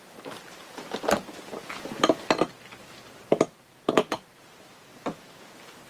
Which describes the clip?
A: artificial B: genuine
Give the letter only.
B